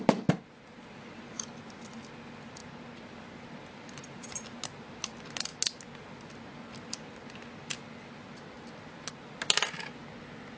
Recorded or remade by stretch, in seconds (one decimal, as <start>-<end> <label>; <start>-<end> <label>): 0.0-10.6 recorded